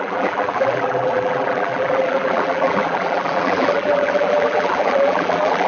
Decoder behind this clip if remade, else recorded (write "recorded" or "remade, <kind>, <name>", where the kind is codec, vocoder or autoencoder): remade, vocoder, BigVGAN v2